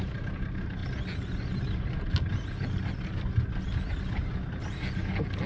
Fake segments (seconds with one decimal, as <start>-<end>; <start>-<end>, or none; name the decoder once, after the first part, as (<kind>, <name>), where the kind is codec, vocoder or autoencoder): none